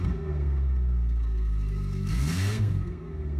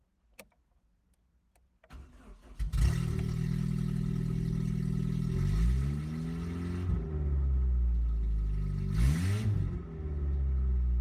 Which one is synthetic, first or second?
first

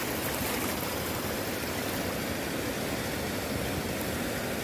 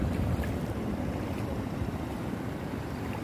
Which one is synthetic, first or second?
second